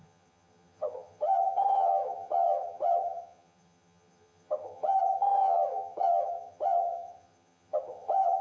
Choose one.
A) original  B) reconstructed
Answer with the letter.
B